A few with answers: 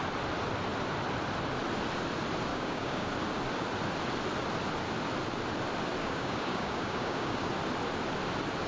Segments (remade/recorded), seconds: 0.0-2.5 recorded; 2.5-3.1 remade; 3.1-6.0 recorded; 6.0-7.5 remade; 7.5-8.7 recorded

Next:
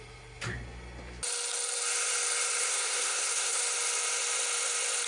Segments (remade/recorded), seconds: 0.0-2.6 recorded; 2.6-3.6 remade; 3.6-5.1 recorded

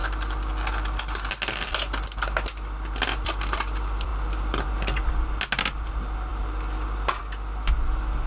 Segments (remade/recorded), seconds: 0.0-8.3 recorded

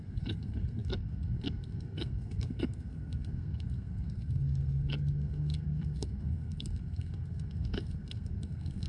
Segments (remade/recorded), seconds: 0.0-8.9 remade

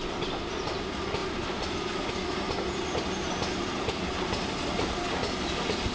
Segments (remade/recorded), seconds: 0.0-1.2 recorded; 1.2-2.1 remade; 2.1-5.9 recorded